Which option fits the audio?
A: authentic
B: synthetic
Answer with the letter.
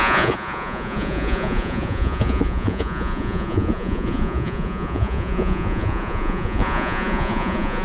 B